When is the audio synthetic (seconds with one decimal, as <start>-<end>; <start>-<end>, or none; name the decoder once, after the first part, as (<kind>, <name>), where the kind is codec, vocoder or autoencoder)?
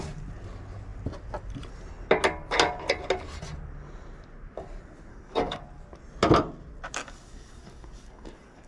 5.1-5.6 (codec, DAC); 7.0-8.7